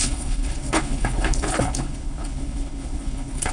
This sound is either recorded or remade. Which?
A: remade